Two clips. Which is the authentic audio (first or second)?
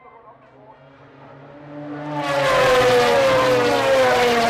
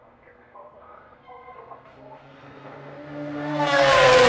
first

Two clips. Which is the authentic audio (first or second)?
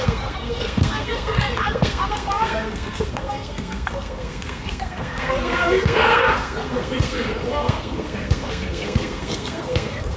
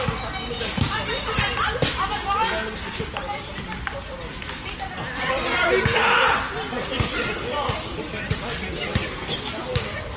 second